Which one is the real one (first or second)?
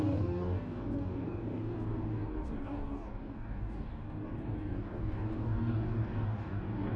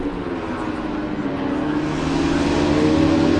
second